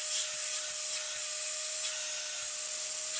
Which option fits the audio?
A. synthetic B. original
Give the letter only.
B